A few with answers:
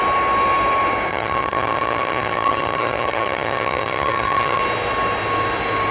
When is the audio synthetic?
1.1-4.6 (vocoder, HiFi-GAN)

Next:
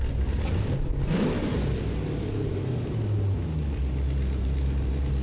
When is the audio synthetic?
none

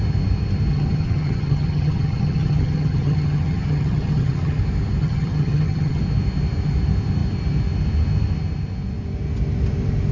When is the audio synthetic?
0.7-4.6 (vocoder, HiFi-GAN); 5.0-6.0

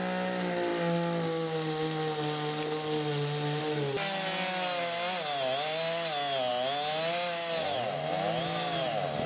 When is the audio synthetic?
none

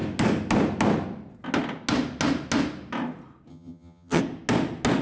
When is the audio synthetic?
3.5-4.2 (vocoder, HiFi-GAN)

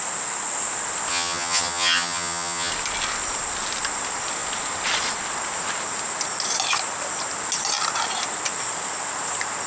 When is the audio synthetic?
1.1-2.7 (vocoder, HiFi-GAN)